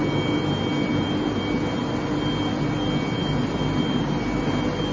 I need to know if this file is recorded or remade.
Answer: recorded